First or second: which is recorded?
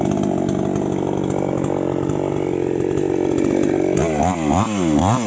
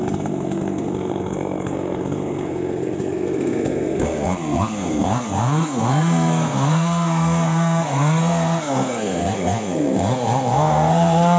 first